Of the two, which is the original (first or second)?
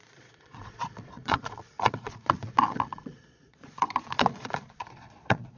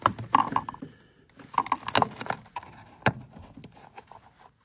second